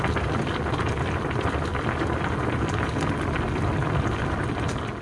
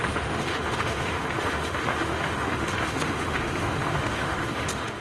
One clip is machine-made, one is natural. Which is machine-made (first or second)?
second